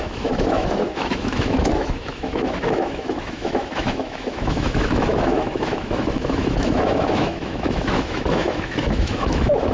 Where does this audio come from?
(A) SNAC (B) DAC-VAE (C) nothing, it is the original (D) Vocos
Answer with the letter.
B